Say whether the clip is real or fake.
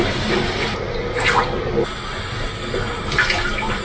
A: real